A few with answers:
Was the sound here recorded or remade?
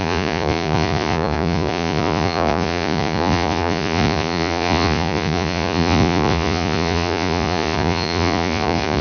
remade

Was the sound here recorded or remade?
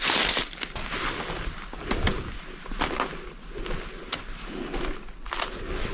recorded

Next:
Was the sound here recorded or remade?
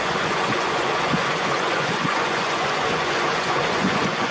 remade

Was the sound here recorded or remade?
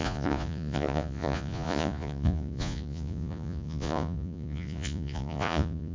remade